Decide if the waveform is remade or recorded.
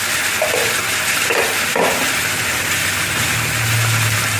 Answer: recorded